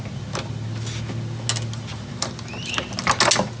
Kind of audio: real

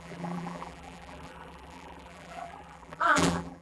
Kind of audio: fake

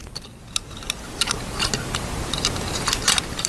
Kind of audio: real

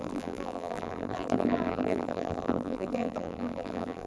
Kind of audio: fake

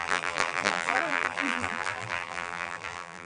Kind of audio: fake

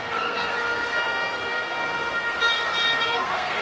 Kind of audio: fake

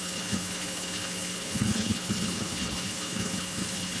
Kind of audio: fake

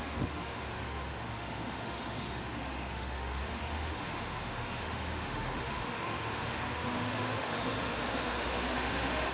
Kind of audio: fake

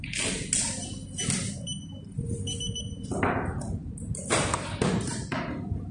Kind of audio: real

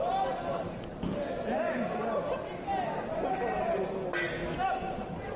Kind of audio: real